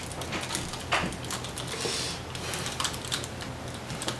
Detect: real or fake fake